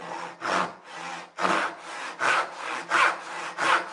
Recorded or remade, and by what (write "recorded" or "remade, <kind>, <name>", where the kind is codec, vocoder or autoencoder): recorded